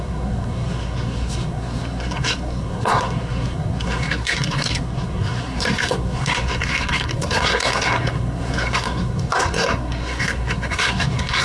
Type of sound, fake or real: fake